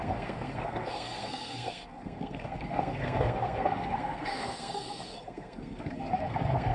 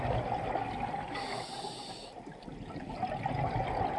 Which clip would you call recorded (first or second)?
second